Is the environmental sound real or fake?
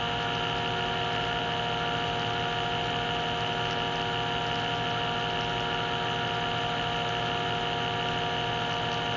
real